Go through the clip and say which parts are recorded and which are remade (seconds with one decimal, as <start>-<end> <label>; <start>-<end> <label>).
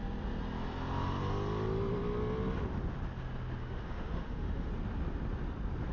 0.0-3.6 recorded; 3.6-4.7 remade; 4.7-5.9 recorded